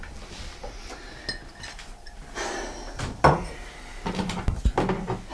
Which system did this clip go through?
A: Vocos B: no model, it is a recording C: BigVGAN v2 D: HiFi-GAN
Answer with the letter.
B